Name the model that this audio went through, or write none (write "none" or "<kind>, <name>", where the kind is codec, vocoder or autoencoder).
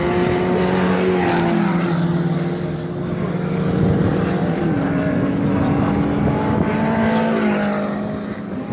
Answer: none